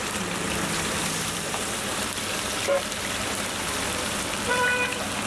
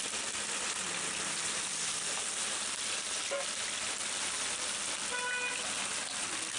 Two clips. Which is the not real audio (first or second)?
first